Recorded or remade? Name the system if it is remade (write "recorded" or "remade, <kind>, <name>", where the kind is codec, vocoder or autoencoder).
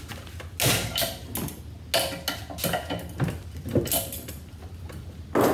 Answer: recorded